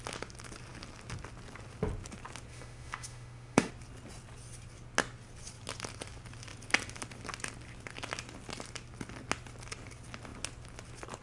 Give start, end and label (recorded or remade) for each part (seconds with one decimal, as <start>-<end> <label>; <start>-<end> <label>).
0.0-2.5 recorded; 2.5-3.7 remade; 3.7-11.2 recorded